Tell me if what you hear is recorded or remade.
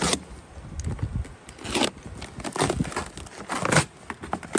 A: recorded